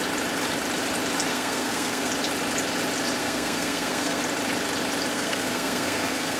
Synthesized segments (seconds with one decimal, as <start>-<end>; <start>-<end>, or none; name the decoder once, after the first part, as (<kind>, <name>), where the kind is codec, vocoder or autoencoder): 1.3-2.1 (codec, SNAC); 3.2-4.2; 5.1-6.4